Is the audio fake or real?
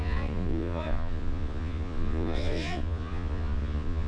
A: fake